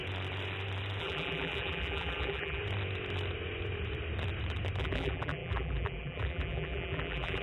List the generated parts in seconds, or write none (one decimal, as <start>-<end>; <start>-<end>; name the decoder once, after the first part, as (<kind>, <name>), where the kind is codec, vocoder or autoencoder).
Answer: 1.0-2.6 (vocoder, BigVGAN v2); 4.8-7.4